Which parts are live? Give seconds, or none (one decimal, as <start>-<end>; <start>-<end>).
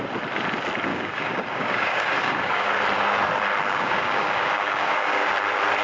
0.0-0.9; 2.7-3.7; 5.3-5.8